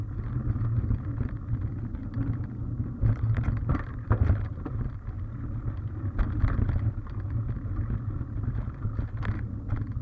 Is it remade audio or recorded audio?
recorded